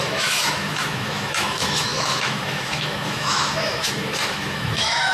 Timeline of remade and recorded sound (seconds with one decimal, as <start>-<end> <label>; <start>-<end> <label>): 0.0-5.1 remade